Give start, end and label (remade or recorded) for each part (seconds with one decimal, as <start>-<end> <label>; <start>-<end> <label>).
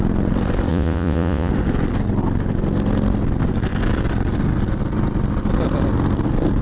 0.0-0.7 recorded; 0.7-1.5 remade; 1.5-6.6 recorded